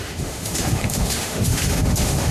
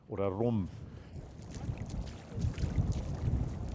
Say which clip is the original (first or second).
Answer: second